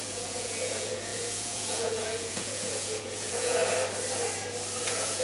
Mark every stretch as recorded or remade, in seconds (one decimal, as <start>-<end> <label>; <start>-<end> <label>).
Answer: 0.0-3.6 remade; 3.6-4.8 recorded; 4.8-5.2 remade